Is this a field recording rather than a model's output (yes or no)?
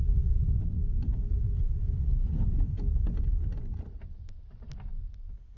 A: yes